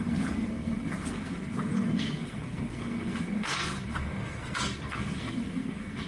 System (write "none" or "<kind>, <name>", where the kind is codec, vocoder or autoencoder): codec, SNAC